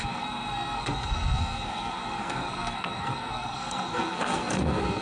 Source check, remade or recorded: remade